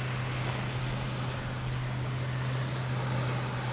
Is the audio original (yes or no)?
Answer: yes